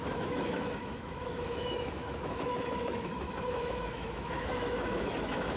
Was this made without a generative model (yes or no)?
no